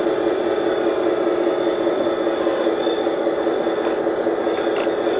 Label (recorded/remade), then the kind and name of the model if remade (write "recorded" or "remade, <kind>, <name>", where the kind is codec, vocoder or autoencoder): recorded